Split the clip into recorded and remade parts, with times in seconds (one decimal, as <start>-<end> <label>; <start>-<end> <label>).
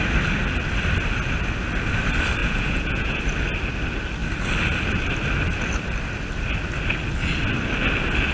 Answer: 0.0-2.4 recorded; 2.4-3.2 remade; 3.2-8.3 recorded